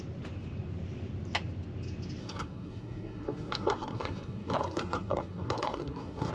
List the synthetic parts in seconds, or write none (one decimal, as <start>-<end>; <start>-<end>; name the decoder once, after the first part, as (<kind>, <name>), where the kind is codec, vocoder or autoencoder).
2.2-6.3 (codec, SNAC)